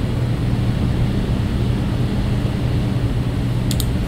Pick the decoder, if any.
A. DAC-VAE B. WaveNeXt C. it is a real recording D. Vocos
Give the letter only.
C